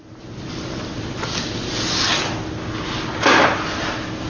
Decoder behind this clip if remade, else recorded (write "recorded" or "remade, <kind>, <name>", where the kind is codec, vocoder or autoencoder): recorded